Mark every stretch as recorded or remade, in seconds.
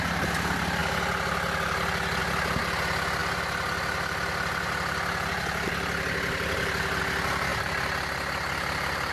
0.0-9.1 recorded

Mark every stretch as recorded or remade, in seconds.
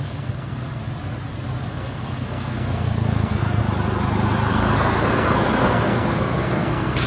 0.0-0.8 remade; 0.8-1.6 recorded; 1.6-3.6 remade; 3.6-4.5 recorded; 4.5-7.1 remade